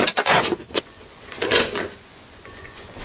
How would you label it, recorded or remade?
remade